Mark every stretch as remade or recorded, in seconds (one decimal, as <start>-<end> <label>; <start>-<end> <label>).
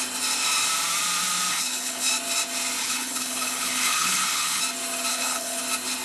0.0-1.5 recorded; 1.5-2.1 remade; 2.1-2.8 recorded; 2.8-4.6 remade; 4.6-5.1 recorded; 5.1-5.6 remade; 5.6-6.0 recorded